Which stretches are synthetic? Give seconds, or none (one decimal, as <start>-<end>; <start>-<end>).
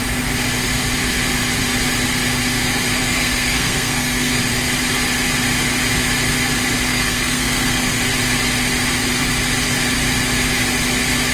3.0-4.4; 6.9-8.0